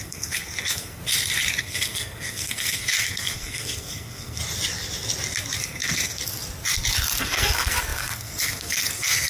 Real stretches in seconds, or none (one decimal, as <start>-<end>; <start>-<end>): 1.0-1.6; 4.4-5.6; 6.2-7.2